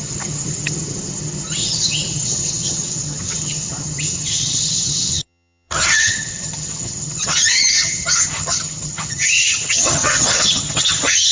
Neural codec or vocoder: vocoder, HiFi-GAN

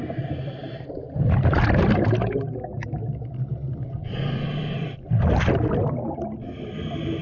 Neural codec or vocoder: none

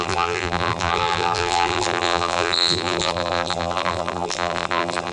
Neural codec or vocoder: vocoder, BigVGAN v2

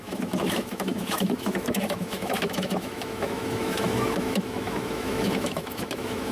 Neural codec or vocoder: autoencoder, DAC-VAE